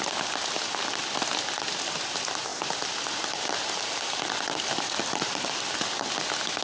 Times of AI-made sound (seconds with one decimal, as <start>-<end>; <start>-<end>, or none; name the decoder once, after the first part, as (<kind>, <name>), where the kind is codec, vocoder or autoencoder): none